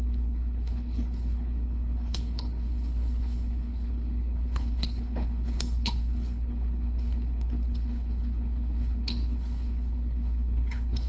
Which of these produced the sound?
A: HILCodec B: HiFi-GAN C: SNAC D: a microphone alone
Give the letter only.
A